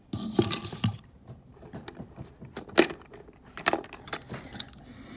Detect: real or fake real